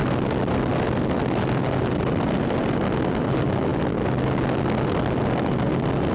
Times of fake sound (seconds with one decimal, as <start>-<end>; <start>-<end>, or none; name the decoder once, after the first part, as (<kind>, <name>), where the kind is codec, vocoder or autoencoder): none